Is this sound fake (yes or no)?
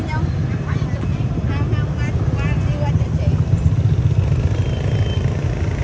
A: no